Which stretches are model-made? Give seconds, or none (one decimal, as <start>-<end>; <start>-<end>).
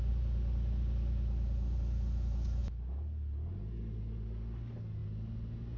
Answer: none